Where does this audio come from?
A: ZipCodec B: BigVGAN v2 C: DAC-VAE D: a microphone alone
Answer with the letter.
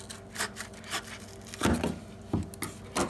D